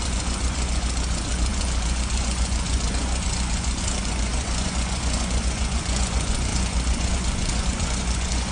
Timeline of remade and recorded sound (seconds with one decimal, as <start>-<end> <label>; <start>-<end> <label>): 0.0-8.5 remade